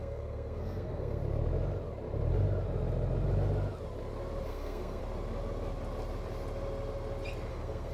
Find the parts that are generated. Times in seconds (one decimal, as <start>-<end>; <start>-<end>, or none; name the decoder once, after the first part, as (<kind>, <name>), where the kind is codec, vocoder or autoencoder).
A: 0.0-1.2 (codec, SNAC); 4.5-5.0; 7.5-7.9